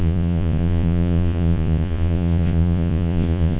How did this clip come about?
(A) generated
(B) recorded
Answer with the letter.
A